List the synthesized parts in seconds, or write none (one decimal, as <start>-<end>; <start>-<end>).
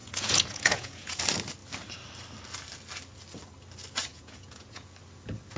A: 0.0-1.2; 4.1-4.9